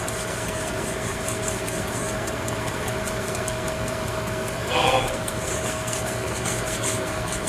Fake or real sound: fake